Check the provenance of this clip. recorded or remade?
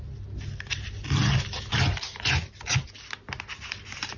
recorded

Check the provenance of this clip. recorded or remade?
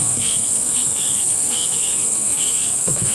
remade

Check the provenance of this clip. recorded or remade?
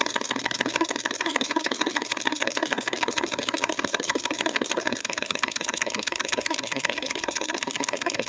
remade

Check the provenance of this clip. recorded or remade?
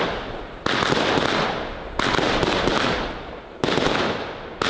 recorded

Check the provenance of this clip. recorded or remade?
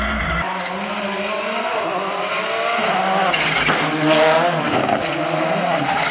recorded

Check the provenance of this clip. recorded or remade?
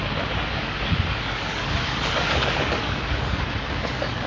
remade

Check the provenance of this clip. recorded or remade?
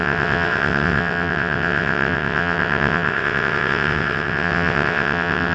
remade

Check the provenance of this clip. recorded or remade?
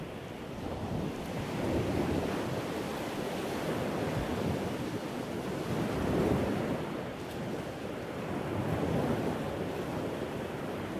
remade